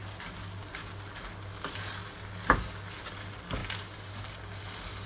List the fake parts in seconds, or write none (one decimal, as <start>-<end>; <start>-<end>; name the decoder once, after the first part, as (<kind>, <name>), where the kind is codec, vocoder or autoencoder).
none